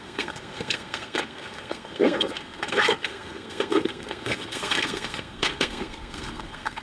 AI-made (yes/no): yes